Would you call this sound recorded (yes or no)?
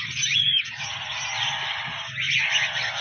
yes